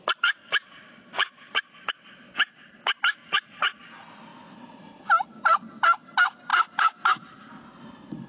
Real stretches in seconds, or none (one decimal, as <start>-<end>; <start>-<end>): 0.0-0.4; 1.9-3.2; 3.8-8.3